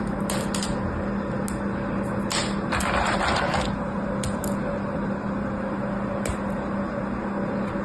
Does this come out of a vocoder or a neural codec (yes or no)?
no